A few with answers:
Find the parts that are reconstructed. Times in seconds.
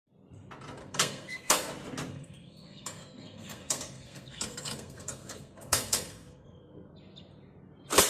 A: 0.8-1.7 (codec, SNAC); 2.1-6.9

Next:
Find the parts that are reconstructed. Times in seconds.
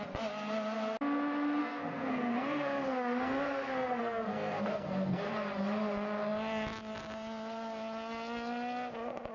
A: 1.6-5.3 (codec, SNAC)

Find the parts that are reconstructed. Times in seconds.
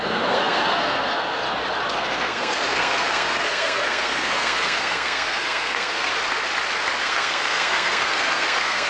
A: 0.0-1.4 (codec, SNAC); 1.9-6.1; 7.0-8.9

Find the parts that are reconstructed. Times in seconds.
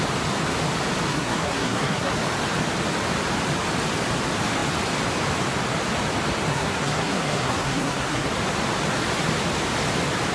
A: 1.1-2.1 (codec, SNAC); 6.5-8.3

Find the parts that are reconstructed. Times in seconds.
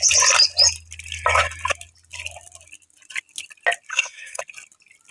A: 3.9-4.4 (codec, SNAC)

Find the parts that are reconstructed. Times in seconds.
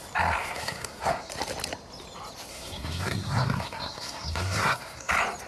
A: 0.4-1.3 (codec, SNAC); 2.5-5.1